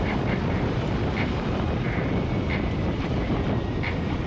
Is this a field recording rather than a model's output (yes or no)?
no